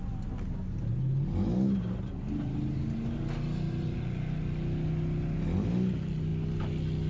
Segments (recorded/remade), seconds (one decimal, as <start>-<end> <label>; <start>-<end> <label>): 0.0-7.1 recorded